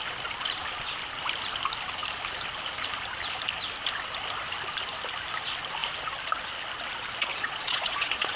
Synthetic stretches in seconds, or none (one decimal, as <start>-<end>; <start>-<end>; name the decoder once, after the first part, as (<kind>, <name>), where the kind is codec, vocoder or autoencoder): 7.3-8.4 (vocoder, Vocos)